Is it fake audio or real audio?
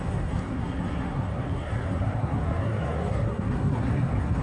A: fake